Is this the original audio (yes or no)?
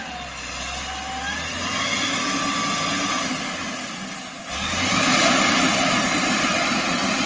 yes